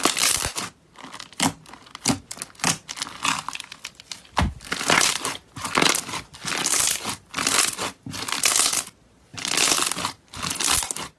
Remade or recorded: recorded